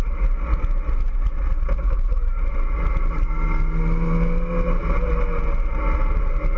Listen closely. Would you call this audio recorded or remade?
recorded